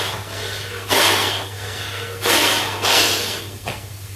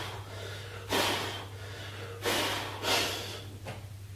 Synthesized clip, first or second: first